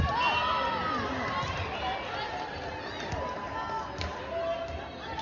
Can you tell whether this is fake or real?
real